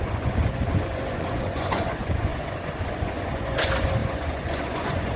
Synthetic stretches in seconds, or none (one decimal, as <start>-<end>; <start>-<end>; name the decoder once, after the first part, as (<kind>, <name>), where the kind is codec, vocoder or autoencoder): 0.0-5.2 (vocoder, Vocos)